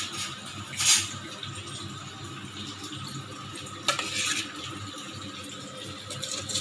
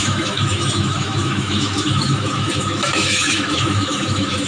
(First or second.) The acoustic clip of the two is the first